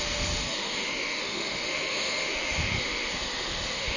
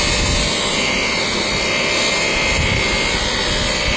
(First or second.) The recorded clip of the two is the second